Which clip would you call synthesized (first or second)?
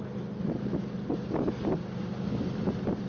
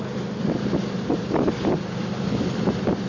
second